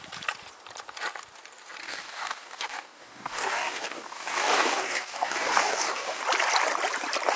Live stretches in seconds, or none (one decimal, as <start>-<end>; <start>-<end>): 0.0-1.8; 6.2-7.4